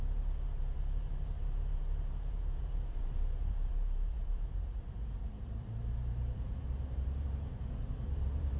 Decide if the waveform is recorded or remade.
remade